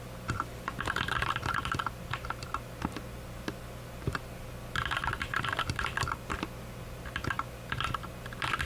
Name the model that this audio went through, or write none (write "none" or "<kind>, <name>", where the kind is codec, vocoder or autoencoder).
none